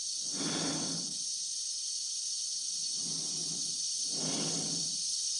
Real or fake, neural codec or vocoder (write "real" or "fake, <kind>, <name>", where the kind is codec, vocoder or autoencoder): real